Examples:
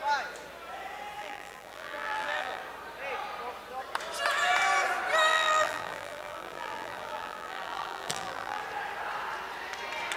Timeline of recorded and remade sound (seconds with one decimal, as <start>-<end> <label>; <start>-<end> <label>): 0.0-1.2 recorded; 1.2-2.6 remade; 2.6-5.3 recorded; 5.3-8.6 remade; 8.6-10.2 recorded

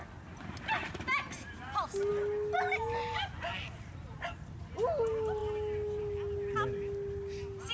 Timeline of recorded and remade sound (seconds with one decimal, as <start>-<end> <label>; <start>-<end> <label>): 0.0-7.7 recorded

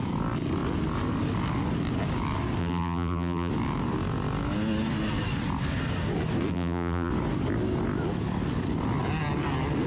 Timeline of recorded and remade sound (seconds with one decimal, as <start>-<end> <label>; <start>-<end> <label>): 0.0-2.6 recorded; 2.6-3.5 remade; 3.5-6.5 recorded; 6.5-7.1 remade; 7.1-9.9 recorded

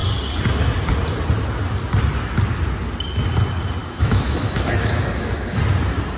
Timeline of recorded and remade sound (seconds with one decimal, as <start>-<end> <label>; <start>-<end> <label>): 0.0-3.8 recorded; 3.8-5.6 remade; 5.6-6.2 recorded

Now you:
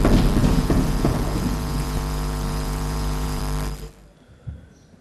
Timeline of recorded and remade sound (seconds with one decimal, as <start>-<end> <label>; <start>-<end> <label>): 0.0-0.4 recorded; 0.4-3.4 remade; 3.4-5.0 recorded

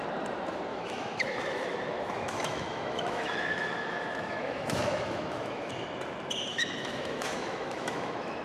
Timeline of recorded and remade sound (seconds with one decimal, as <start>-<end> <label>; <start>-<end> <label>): 0.0-0.7 recorded; 0.7-5.7 remade; 5.7-6.5 recorded; 6.5-8.4 remade